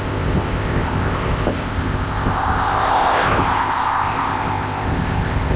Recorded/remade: remade